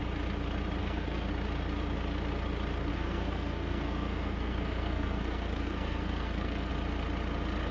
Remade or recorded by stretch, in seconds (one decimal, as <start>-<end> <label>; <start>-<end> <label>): 0.0-0.8 recorded; 0.8-1.3 remade; 1.3-2.9 recorded; 2.9-6.7 remade; 6.7-7.7 recorded